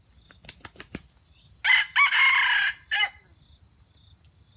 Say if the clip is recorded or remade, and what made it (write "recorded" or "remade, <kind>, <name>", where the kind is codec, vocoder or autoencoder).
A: recorded